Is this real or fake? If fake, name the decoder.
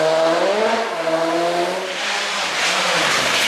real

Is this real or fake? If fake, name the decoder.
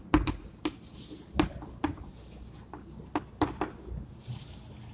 real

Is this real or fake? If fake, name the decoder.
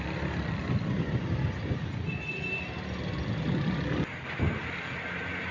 real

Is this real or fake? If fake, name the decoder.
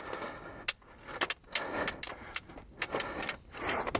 real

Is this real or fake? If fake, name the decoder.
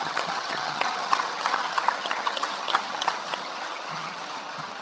fake, vocoder, HiFi-GAN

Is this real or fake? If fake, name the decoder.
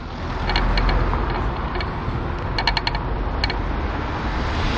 real